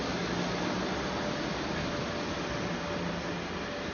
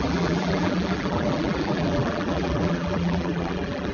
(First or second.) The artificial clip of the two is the second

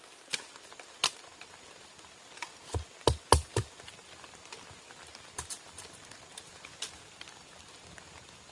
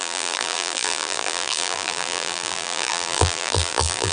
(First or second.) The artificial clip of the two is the second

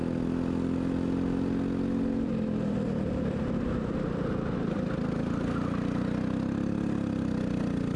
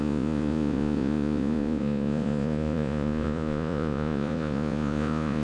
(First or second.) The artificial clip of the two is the second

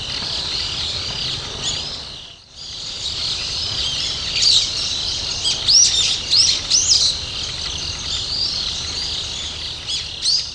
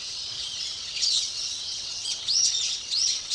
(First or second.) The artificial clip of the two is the second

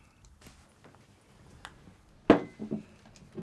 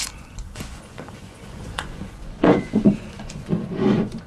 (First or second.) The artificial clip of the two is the second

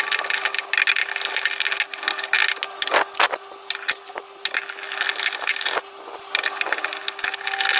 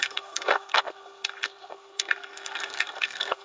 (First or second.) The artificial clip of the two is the second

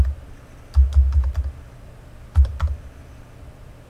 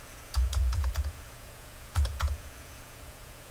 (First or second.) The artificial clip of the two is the second